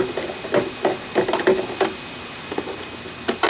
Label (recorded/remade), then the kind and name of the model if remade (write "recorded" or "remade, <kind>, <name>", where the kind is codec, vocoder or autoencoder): recorded